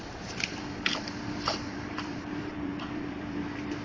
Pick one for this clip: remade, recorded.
remade